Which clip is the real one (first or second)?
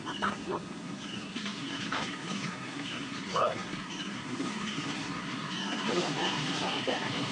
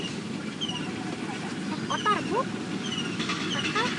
second